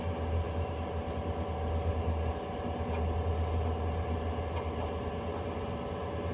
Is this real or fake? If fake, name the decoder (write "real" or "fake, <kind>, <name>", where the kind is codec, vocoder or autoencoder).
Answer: real